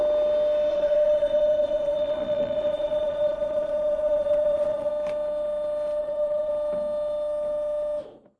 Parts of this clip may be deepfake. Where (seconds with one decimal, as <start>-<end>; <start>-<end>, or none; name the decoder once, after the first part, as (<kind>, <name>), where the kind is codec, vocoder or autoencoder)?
0.7-4.9 (vocoder, Vocos); 6.0-6.5